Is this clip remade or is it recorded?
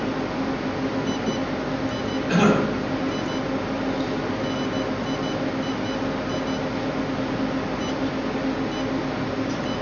recorded